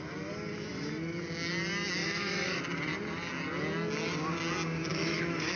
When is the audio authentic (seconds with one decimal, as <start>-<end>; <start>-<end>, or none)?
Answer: 0.0-2.0; 2.6-4.9